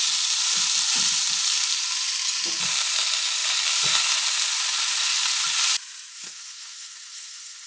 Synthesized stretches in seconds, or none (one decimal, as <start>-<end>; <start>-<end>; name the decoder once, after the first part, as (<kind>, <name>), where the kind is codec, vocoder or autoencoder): 6.1-7.7 (codec, SNAC)